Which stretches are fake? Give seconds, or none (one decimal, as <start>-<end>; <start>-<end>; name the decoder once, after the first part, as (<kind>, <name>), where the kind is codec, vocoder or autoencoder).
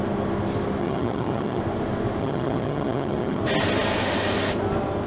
0.8-1.6 (vocoder, HiFi-GAN); 2.2-3.4